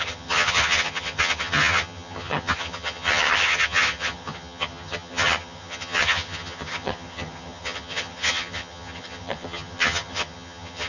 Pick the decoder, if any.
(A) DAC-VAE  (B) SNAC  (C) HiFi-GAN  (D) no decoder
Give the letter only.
C